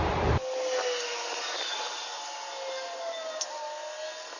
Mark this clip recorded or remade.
recorded